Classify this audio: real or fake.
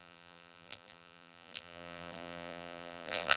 fake